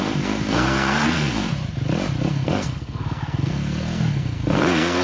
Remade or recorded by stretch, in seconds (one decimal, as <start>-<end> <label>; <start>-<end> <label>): 0.0-1.5 remade; 1.5-2.2 recorded; 2.2-5.0 remade